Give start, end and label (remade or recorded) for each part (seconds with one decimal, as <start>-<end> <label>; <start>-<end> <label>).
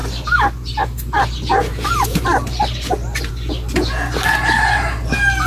0.0-5.5 recorded